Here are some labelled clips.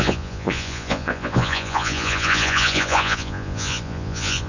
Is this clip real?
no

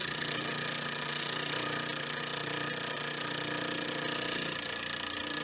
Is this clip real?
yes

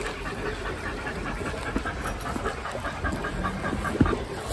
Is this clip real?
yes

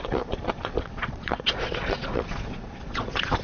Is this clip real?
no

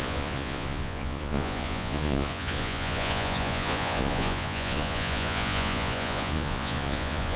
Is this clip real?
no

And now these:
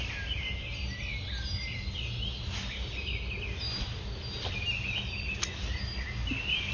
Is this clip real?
yes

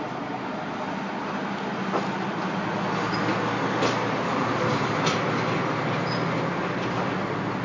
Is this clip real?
yes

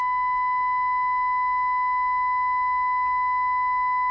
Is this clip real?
yes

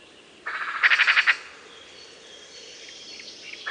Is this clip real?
yes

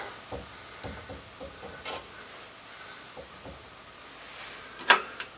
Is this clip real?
yes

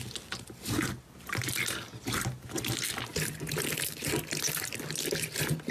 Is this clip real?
yes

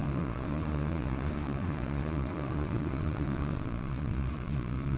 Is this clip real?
no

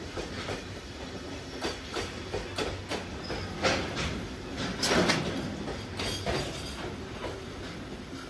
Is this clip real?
yes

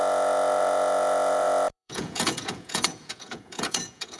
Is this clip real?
no